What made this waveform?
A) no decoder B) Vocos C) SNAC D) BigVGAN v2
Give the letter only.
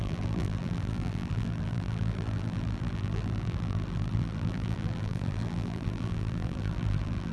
D